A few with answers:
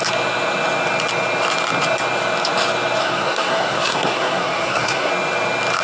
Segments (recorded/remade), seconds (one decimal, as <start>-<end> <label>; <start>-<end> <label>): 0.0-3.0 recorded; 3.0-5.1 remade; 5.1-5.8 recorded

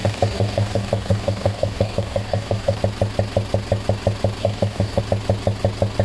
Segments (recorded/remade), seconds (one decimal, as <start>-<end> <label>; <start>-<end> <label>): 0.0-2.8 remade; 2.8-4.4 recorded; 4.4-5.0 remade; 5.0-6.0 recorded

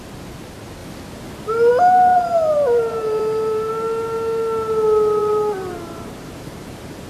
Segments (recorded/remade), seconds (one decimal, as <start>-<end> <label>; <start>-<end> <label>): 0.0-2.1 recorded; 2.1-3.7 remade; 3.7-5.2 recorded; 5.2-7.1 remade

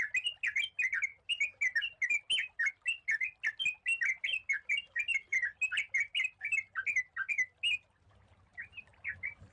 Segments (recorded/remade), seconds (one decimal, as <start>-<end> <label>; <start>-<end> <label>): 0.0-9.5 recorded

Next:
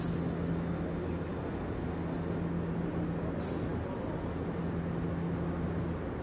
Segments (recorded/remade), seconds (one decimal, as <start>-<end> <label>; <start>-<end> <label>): 0.0-6.2 recorded